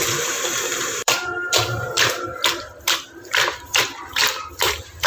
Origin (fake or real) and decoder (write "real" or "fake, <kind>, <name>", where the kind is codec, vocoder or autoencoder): fake, vocoder, BigVGAN v2